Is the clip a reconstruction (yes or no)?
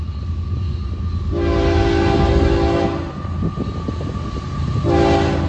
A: no